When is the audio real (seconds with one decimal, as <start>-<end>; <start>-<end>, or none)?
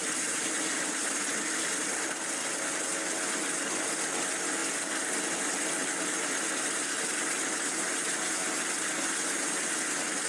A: 2.4-10.3